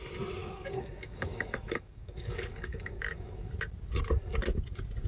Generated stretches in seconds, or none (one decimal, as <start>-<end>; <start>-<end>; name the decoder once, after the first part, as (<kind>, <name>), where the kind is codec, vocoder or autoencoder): 0.4-3.5 (codec, DAC)